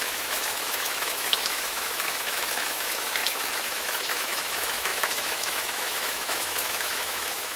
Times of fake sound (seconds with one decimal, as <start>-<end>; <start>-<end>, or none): 0.0-7.6